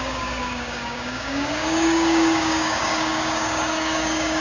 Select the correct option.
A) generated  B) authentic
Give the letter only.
A